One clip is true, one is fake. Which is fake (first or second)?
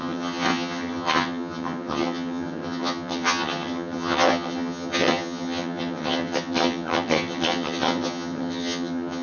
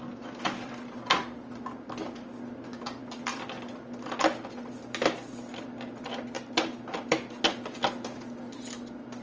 first